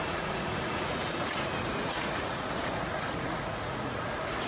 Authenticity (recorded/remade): remade